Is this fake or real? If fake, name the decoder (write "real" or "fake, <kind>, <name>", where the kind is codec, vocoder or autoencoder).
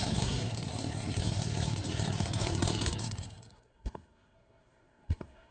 fake, codec, SNAC